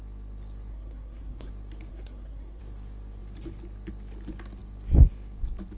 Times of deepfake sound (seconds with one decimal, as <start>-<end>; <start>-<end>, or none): 0.7-1.5; 1.9-2.6